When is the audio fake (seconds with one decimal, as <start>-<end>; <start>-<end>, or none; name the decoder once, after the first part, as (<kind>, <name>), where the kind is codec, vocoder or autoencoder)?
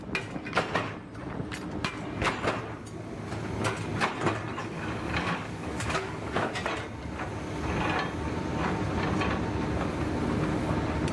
4.6-6.5 (codec, DAC)